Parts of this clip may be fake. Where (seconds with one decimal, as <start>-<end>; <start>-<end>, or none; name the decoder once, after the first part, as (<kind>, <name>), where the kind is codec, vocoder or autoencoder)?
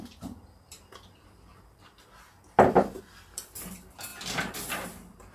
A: 0.0-4.1 (vocoder, BigVGAN v2); 4.7-5.3